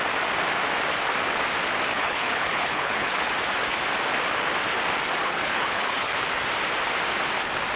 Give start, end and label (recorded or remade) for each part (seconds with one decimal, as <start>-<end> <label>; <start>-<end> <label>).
0.0-1.9 recorded; 1.9-3.2 remade; 3.2-5.2 recorded; 5.2-6.2 remade; 6.2-7.8 recorded